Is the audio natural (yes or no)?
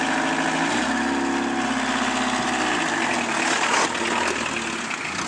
yes